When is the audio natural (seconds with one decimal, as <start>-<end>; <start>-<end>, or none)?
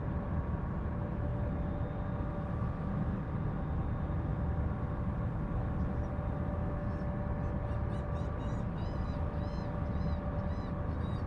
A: 0.0-11.3